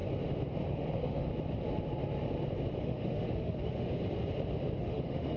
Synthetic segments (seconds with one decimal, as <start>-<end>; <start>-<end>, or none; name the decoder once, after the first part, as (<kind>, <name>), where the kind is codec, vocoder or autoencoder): 0.7-1.3 (autoencoder, DAC-VAE); 2.8-3.9; 4.8-5.4